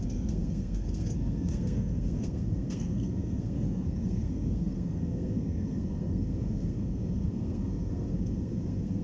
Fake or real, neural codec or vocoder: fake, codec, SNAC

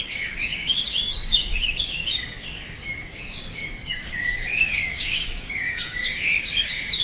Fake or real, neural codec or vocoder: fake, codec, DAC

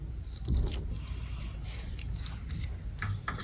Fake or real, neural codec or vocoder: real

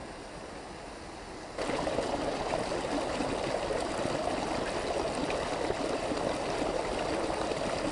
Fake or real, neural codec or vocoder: real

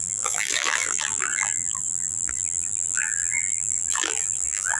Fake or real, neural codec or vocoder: fake, vocoder, BigVGAN v2